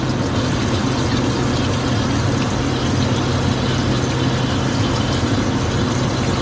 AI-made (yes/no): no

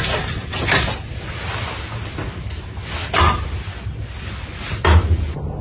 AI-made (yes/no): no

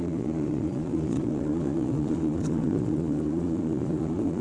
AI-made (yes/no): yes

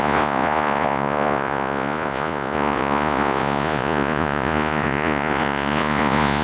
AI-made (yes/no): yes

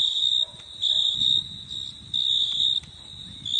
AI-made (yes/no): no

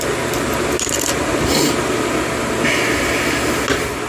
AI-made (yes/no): no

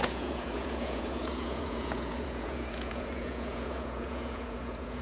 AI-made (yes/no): yes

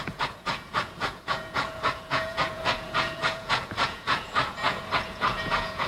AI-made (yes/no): yes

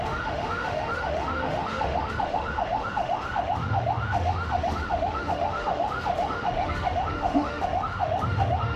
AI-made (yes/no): yes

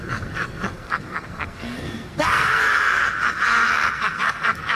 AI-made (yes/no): yes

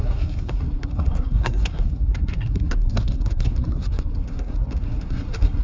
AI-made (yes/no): yes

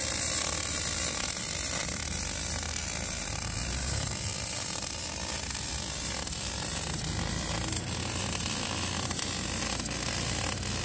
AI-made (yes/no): yes